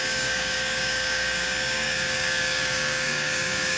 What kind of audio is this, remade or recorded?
remade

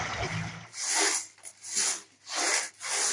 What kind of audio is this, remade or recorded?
recorded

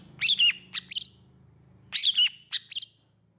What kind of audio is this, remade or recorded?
recorded